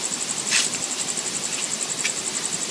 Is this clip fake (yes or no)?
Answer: yes